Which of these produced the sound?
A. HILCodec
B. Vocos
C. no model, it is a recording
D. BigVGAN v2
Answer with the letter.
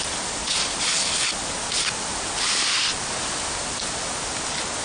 C